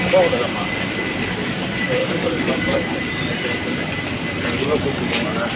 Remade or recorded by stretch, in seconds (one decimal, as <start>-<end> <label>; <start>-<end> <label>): 0.0-2.0 recorded; 2.0-3.2 remade; 3.2-4.6 recorded; 4.6-5.6 remade